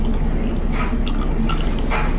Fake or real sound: real